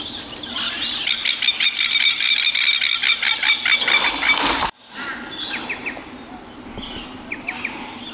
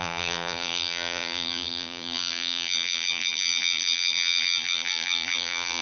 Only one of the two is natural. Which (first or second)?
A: first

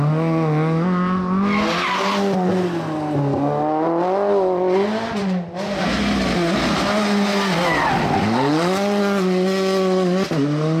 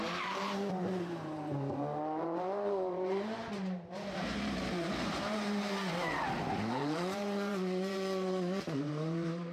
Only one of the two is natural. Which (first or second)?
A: first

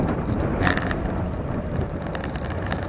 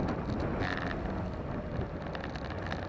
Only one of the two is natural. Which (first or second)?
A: second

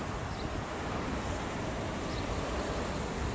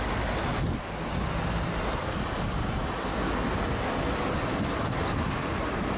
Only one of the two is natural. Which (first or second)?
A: second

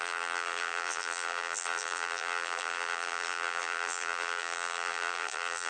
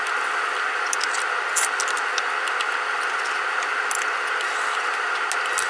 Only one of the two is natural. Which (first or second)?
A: second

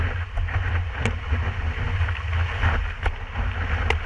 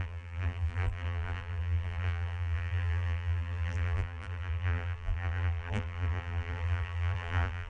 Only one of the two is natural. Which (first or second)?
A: first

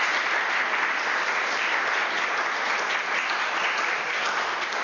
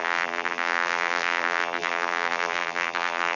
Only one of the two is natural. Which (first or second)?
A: first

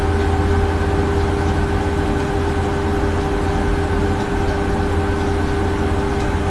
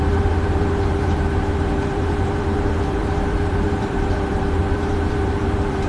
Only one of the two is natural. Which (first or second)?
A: first